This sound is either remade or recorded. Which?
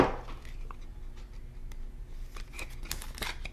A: recorded